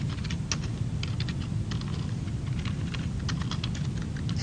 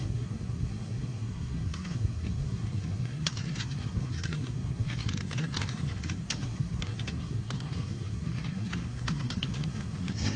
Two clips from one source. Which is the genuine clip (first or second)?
first